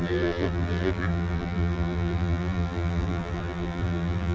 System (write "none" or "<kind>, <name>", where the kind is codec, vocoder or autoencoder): vocoder, BigVGAN v2